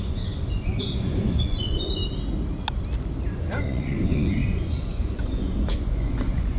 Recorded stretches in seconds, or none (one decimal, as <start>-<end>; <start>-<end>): 2.0-3.3